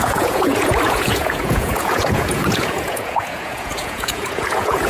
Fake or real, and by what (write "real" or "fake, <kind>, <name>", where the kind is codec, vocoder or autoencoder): fake, vocoder, Vocos